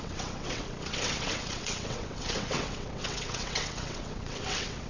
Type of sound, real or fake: fake